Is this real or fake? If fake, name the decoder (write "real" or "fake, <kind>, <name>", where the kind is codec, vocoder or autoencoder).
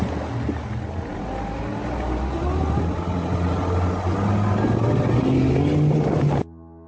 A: real